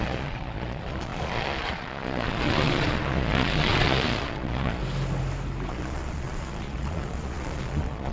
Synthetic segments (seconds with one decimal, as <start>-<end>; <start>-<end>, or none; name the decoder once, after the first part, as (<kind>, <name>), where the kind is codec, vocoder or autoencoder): 0.0-4.8 (vocoder, Vocos); 5.7-8.1